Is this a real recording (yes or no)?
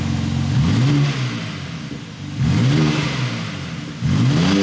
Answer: yes